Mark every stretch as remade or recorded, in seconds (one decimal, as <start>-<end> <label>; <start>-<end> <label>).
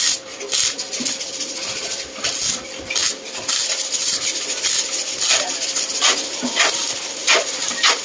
0.0-8.0 recorded